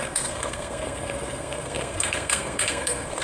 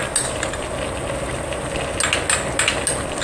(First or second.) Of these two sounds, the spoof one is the first